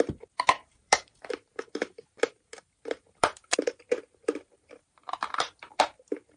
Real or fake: fake